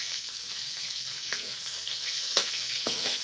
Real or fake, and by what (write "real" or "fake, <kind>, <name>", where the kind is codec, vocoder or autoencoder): fake, codec, SNAC